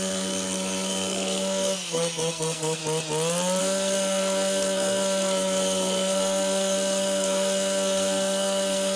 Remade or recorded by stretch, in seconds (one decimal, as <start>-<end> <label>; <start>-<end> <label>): 0.0-2.8 remade; 2.8-3.6 recorded; 3.6-9.0 remade